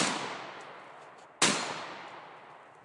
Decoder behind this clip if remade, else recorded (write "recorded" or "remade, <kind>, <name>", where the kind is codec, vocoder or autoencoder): recorded